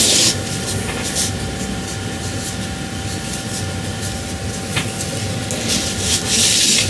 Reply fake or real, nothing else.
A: real